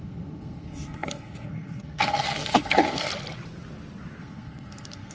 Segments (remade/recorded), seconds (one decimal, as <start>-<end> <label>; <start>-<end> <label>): 0.0-3.1 remade; 3.1-4.2 recorded; 4.2-5.1 remade